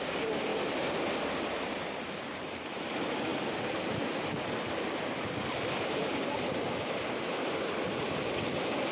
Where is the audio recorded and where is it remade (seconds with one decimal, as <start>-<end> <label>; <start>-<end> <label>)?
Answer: 0.0-3.3 remade; 3.3-4.6 recorded; 4.6-8.9 remade